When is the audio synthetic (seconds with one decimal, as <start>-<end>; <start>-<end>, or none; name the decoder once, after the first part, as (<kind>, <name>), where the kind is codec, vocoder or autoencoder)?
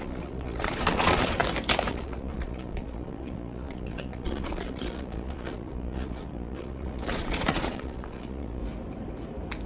0.0-1.4 (vocoder, Vocos); 1.9-8.6